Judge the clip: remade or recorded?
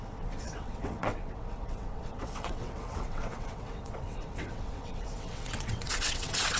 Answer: remade